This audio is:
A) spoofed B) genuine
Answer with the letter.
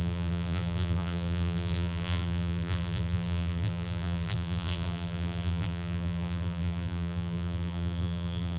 A